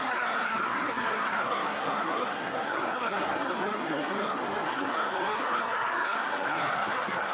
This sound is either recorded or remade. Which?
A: remade